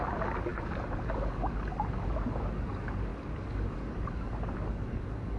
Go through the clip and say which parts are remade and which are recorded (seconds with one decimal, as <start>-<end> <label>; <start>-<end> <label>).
0.0-5.4 remade